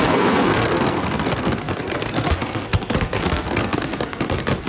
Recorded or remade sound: remade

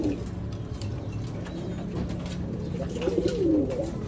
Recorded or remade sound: recorded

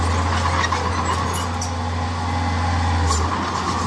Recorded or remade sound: recorded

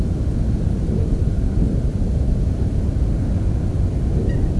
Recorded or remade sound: recorded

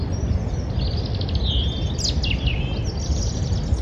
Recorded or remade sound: recorded